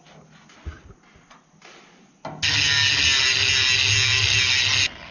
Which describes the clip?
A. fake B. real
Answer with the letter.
B